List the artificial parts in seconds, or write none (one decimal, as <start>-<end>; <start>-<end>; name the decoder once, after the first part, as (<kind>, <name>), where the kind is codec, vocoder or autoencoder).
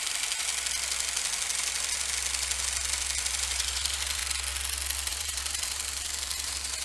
0.0-0.5 (vocoder, BigVGAN v2); 3.2-4.2; 5.1-6.8